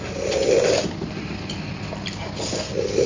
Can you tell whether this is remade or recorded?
recorded